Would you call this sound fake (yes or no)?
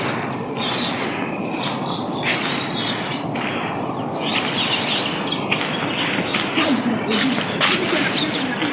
no